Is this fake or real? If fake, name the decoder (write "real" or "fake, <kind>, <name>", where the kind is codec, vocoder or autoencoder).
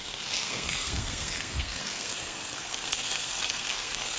fake, codec, SNAC